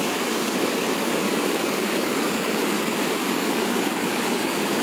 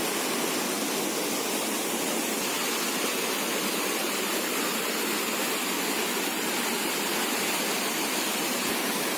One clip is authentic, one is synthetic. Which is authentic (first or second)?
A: second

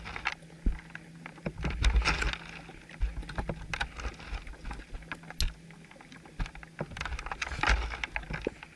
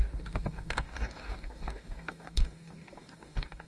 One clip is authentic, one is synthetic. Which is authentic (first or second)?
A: first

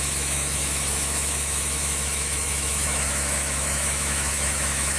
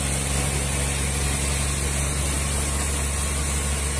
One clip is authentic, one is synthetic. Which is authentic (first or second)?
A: second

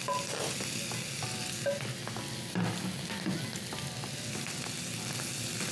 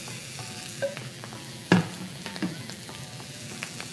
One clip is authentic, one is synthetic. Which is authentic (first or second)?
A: first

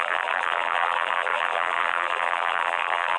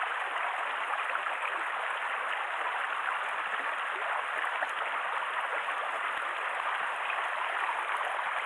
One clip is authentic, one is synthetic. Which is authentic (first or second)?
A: second